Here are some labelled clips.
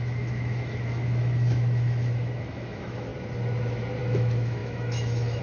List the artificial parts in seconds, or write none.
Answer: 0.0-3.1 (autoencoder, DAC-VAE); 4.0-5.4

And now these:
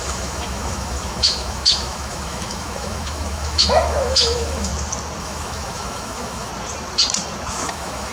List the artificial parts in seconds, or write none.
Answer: 0.0-4.7 (autoencoder, DAC-VAE); 5.2-6.5; 7.5-8.1

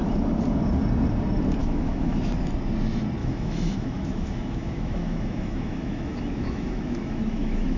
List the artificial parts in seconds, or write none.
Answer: 1.6-2.2 (autoencoder, DAC-VAE); 3.2-7.8

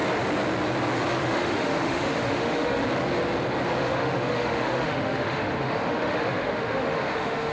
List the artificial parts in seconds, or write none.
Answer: 1.2-2.8 (autoencoder, DAC-VAE); 3.8-7.5